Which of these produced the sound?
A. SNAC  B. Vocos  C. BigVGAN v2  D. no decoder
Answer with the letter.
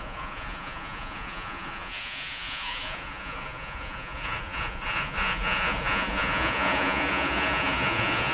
B